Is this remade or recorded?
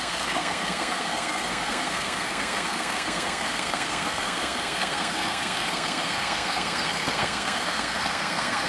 remade